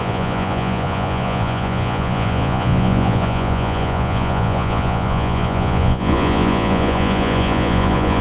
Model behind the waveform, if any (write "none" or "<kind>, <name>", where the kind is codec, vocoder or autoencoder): vocoder, Vocos